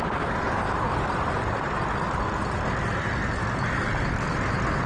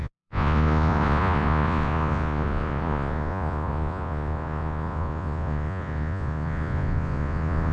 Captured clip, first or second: first